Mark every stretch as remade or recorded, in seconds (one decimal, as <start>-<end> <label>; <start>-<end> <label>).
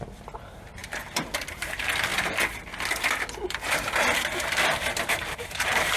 0.0-2.1 remade; 2.1-5.1 recorded; 5.1-6.0 remade